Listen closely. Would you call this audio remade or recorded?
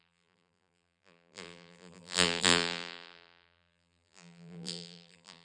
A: remade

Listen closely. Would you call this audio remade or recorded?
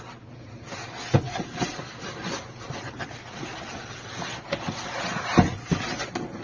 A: recorded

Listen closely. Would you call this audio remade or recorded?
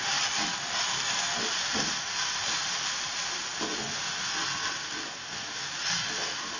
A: recorded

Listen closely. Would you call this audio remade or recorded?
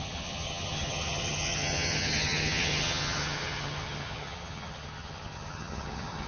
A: remade